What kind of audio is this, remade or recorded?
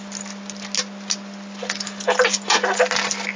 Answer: recorded